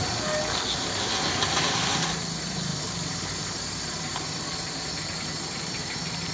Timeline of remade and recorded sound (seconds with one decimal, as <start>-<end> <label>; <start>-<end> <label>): 0.0-2.7 recorded; 2.7-6.3 remade